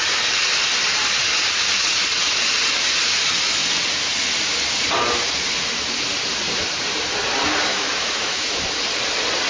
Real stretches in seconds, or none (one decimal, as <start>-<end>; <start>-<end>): 0.0-7.7; 8.6-9.5